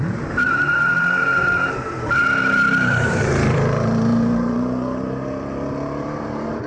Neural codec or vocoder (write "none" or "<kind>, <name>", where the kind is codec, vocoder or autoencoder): vocoder, BigVGAN v2